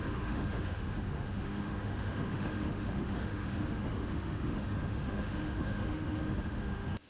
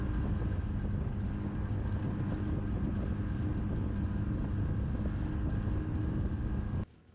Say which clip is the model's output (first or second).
first